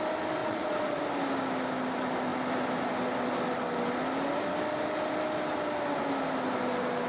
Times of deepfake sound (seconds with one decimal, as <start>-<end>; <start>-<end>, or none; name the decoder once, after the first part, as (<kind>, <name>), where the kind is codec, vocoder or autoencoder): 0.4-1.0 (vocoder, Vocos)